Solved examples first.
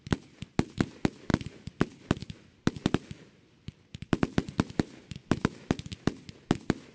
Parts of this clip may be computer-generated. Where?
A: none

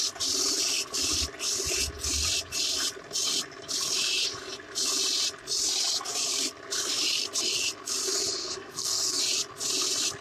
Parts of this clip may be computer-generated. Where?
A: 8.4-9.2 (codec, SNAC)

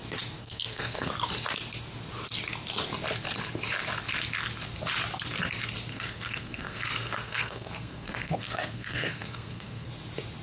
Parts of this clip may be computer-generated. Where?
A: 0.4-1.1 (codec, SNAC); 5.9-9.9

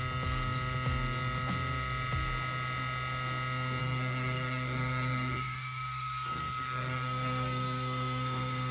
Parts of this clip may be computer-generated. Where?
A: 3.8-8.7 (codec, SNAC)

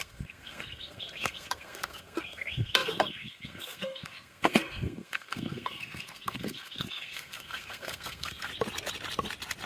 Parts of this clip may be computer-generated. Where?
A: 0.0-8.5 (codec, SNAC)